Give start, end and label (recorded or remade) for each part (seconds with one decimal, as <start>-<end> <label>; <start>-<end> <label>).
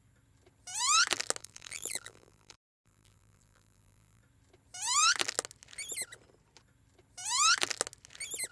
0.0-1.4 recorded; 1.4-4.2 remade; 4.2-8.5 recorded